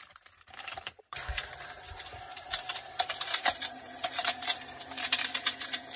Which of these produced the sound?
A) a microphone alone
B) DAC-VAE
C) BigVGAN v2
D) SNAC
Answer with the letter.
C